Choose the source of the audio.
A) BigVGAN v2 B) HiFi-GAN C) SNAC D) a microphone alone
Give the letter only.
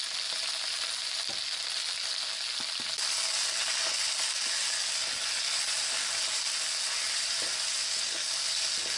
D